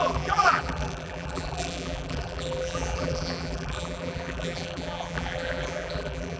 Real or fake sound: fake